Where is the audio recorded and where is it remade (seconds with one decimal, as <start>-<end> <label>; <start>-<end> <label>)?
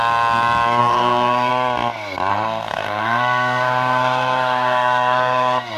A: 0.0-0.8 recorded; 0.8-1.5 remade; 1.5-2.3 recorded; 2.3-5.8 remade